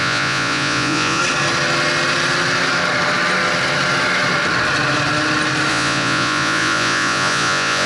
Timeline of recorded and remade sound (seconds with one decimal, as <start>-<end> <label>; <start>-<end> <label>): 0.0-1.2 remade; 1.2-5.7 recorded; 5.7-7.9 remade